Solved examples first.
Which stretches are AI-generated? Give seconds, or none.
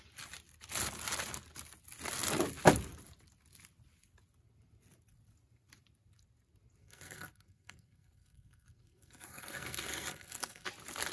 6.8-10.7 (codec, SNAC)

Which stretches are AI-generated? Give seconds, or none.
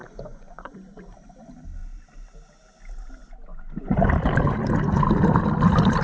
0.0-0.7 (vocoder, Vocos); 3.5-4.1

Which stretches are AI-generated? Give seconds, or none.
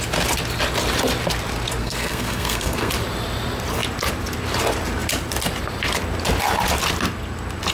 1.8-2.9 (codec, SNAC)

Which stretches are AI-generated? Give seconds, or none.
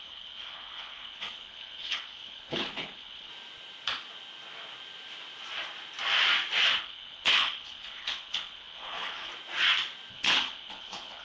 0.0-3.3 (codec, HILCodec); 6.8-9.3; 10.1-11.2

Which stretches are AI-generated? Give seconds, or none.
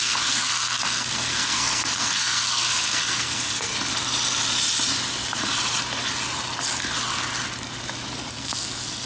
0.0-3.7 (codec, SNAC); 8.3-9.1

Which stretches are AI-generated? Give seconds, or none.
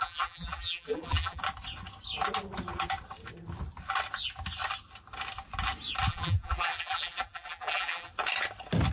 0.0-1.4 (vocoder, BigVGAN v2); 6.1-8.1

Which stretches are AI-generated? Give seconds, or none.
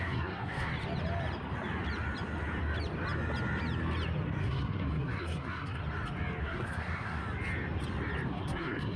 0.0-0.7 (codec, SNAC); 4.4-5.8; 6.4-7.2; 8.3-9.0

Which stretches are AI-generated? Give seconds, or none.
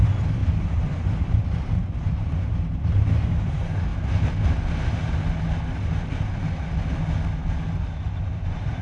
0.0-3.9 (vocoder, BigVGAN v2); 8.1-8.8